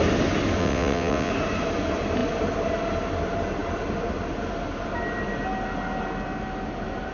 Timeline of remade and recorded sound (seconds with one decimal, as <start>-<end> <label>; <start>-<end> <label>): 0.0-0.6 recorded; 0.6-1.3 remade; 1.3-7.1 recorded